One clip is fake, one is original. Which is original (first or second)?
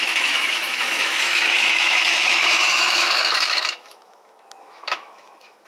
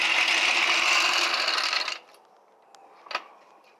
second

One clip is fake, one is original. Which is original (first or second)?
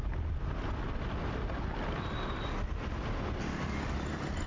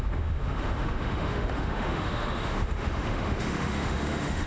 first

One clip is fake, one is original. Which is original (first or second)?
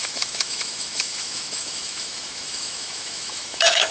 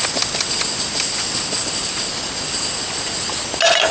second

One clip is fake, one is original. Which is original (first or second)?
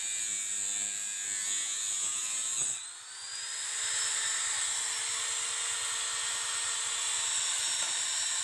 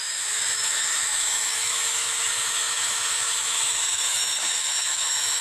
first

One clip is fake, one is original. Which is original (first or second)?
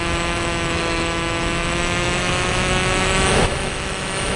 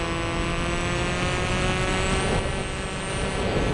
second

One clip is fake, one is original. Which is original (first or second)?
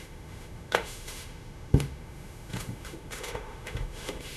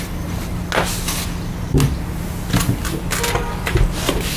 second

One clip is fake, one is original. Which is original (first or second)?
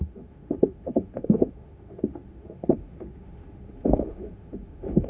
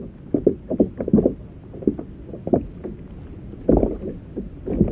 second